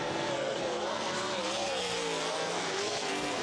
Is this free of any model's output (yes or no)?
no